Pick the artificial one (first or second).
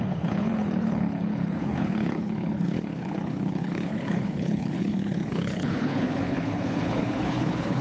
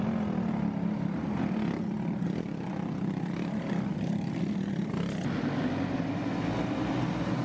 first